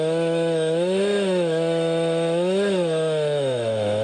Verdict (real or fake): fake